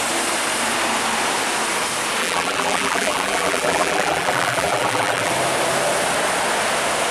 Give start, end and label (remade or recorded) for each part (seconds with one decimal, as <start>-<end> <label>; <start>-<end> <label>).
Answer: 0.0-2.2 recorded; 2.2-5.3 remade; 5.3-7.1 recorded